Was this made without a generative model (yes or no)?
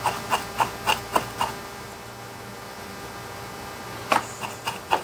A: yes